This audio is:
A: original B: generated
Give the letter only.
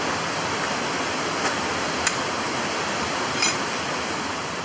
A